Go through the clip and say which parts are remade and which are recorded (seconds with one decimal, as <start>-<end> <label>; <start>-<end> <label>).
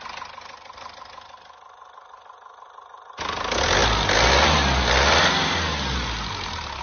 0.0-6.8 recorded